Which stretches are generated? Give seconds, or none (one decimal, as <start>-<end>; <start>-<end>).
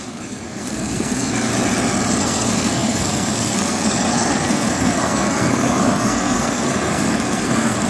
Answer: 0.0-1.5; 2.2-7.9